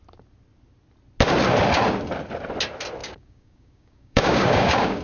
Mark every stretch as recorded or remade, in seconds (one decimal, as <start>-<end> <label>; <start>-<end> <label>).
0.0-3.0 recorded; 3.0-5.0 remade